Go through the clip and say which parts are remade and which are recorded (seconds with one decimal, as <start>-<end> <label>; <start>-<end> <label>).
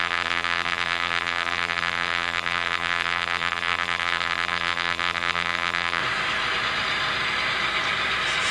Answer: 0.0-6.0 remade; 6.0-8.5 recorded